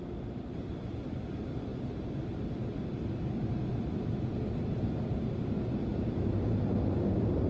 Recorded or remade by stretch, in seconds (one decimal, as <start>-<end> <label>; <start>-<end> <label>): 0.0-7.5 recorded